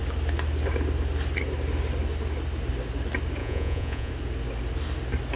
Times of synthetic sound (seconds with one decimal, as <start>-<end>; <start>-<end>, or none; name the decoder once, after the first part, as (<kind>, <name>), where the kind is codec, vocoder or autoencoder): 3.4-4.1 (vocoder, Vocos)